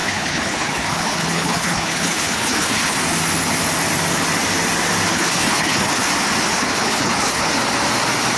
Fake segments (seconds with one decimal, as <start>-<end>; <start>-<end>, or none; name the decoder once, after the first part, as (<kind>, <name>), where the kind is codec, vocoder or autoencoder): 0.0-3.0 (codec, HILCodec); 5.1-6.1; 6.6-7.5